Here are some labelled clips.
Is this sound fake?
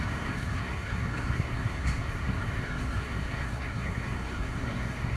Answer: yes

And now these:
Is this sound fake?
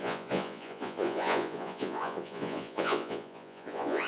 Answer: yes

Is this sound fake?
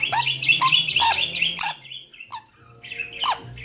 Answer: no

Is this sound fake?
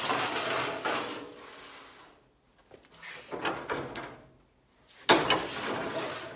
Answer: no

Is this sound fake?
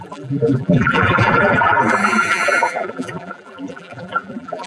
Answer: yes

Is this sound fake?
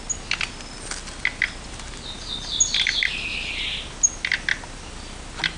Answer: no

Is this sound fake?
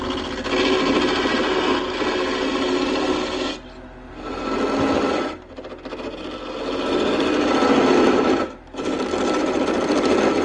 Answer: no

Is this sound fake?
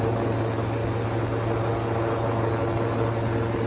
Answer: no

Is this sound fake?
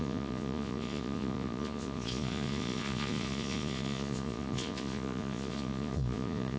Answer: yes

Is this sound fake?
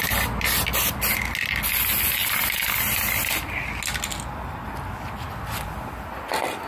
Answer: no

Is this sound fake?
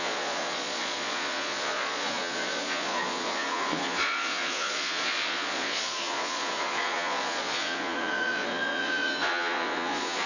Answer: yes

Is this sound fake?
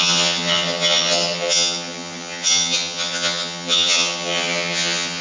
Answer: yes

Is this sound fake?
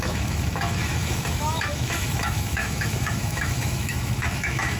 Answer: yes